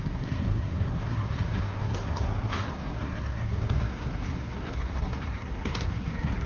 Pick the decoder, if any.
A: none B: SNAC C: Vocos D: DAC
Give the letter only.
B